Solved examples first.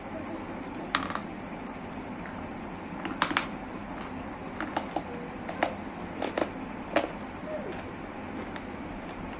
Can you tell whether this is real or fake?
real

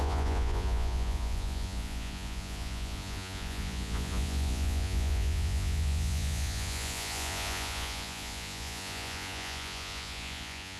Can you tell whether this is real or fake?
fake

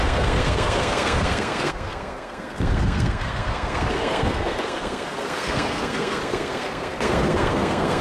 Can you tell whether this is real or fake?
fake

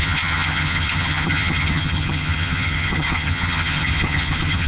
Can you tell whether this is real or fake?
fake